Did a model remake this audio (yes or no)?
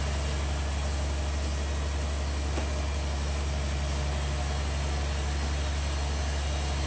no